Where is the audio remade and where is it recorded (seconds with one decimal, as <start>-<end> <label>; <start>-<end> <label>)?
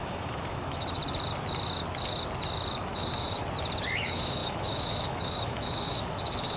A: 0.0-1.0 remade; 1.0-2.8 recorded; 2.8-3.4 remade; 3.4-4.0 recorded; 4.0-6.6 remade